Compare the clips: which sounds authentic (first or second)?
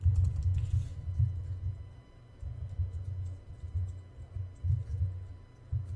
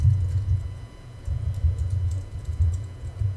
first